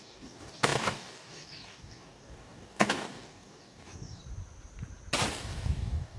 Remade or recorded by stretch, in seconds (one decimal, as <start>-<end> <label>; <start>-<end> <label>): 0.0-4.2 remade; 4.2-5.3 recorded; 5.3-6.2 remade